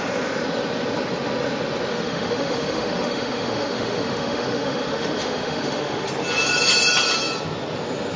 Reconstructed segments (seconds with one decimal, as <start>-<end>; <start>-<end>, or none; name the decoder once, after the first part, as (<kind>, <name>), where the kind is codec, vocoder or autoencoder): 1.9-6.1 (autoencoder, DAC-VAE)